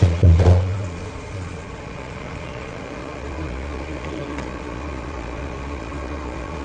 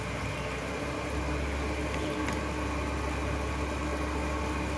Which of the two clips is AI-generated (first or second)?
first